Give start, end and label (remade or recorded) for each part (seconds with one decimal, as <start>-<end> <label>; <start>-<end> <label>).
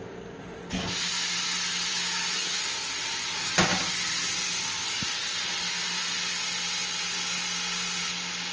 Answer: 0.0-1.9 recorded; 1.9-2.6 remade; 2.6-8.5 recorded